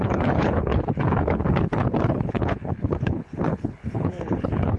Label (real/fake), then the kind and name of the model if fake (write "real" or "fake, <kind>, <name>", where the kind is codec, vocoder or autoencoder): fake, codec, HILCodec